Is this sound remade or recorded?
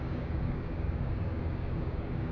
remade